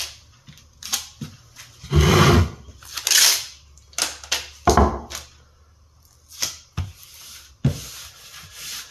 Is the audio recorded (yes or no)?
yes